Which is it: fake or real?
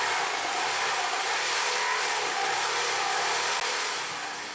real